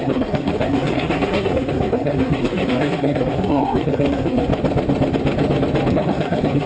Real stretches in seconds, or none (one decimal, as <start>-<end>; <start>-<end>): 4.5-5.9